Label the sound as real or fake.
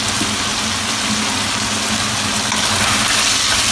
real